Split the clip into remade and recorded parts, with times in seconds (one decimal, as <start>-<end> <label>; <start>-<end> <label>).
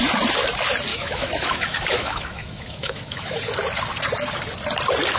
0.0-0.9 recorded; 0.9-3.4 remade; 3.4-5.2 recorded